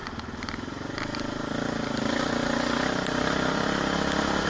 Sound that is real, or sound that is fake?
real